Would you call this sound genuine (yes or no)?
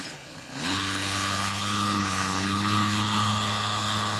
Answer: no